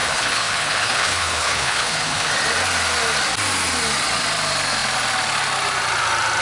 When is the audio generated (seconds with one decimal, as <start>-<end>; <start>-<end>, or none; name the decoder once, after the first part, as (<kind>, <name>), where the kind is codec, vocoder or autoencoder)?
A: 0.0-2.3 (codec, HILCodec)